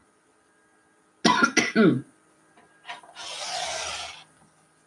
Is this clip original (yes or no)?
yes